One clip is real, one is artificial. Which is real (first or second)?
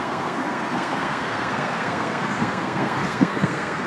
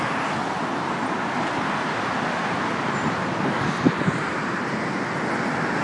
second